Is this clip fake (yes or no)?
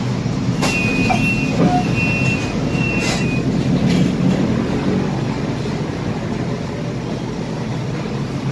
no